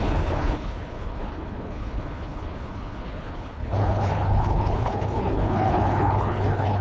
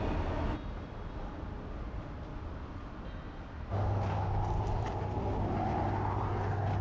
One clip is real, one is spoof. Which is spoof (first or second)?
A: first